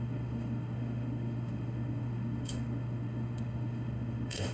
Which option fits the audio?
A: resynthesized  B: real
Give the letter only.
A